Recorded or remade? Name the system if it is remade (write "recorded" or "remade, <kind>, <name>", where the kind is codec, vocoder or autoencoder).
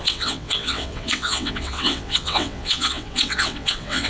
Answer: remade, vocoder, WaveNeXt